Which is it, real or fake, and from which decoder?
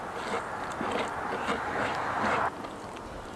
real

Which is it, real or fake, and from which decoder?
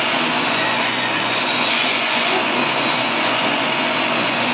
fake, vocoder, Vocos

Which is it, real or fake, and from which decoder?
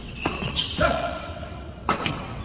fake, vocoder, WaveNeXt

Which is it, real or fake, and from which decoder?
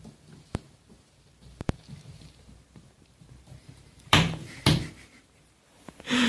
fake, vocoder, BigVGAN v2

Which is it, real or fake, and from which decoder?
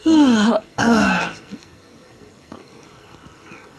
fake, codec, SNAC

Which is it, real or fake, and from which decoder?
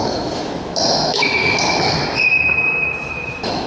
fake, autoencoder, DAC-VAE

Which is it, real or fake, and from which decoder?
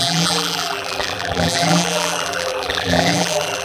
fake, vocoder, BigVGAN v2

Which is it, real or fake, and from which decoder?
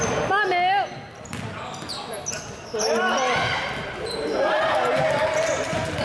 real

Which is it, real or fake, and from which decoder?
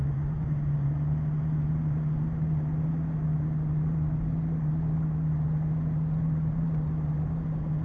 real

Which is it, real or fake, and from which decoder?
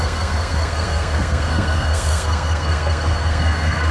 fake, codec, SNAC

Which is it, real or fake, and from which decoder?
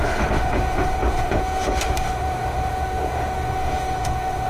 fake, autoencoder, DAC-VAE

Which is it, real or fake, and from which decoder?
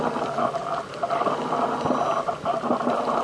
real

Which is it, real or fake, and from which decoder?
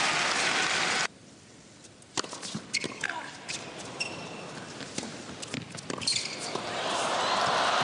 real